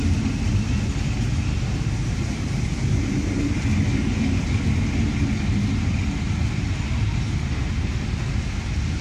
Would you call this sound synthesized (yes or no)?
no